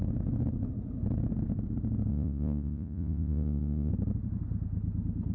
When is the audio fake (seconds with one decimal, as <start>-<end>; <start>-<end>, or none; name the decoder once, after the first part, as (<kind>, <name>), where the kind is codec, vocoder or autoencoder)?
2.1-3.9 (vocoder, Vocos)